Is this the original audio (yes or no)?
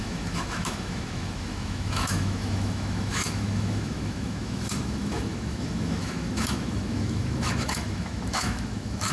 no